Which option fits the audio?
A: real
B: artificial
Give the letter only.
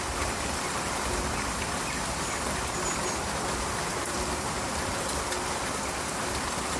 A